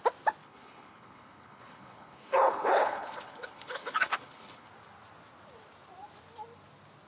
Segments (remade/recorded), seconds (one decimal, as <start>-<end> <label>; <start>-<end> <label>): 0.0-0.4 recorded; 0.4-4.7 remade; 4.7-7.1 recorded

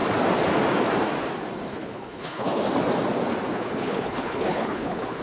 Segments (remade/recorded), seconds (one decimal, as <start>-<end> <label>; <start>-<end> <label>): 0.0-1.7 recorded; 1.7-2.6 remade; 2.6-3.5 recorded; 3.5-5.2 remade

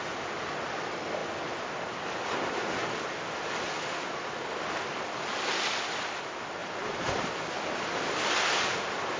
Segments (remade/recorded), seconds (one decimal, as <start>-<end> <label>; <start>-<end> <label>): 0.0-9.2 recorded

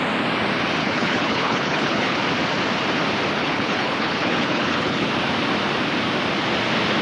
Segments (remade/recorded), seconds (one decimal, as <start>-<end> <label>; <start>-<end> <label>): 0.0-0.8 recorded; 0.8-2.2 remade; 2.2-3.4 recorded; 3.4-5.1 remade; 5.1-7.0 recorded